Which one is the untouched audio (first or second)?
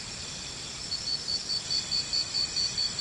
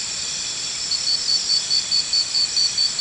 first